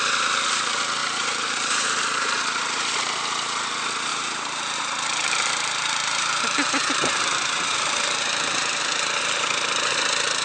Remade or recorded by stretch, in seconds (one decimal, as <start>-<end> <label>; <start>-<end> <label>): 0.0-1.0 recorded; 1.0-2.3 remade; 2.3-4.1 recorded; 4.1-8.8 remade; 8.8-10.4 recorded